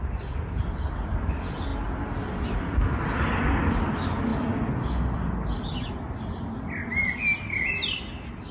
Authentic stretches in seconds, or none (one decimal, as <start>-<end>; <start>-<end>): 0.0-8.5